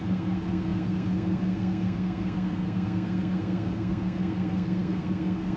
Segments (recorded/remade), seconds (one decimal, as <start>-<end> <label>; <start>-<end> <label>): 0.0-5.6 remade